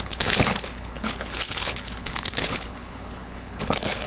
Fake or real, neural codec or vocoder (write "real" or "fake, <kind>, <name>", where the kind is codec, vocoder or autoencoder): fake, codec, HILCodec